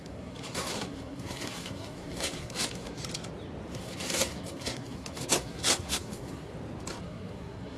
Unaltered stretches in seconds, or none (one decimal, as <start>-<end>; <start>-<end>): 3.0-3.7; 6.5-7.0